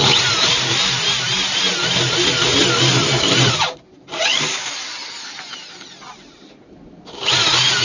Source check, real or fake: real